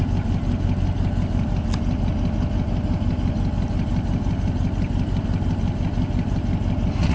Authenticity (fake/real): real